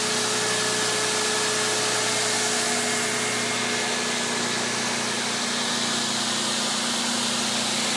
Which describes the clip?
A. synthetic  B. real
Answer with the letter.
B